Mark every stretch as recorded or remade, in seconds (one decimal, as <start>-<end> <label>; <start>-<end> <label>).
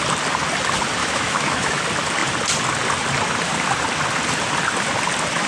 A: 0.0-1.0 recorded; 1.0-1.8 remade; 1.8-5.5 recorded